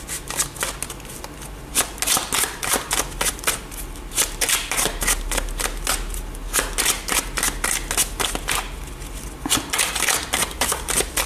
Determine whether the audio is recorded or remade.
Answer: recorded